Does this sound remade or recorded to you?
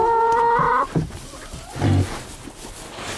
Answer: recorded